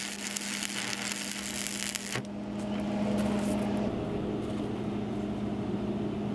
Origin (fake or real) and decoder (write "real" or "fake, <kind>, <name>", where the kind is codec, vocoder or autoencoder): real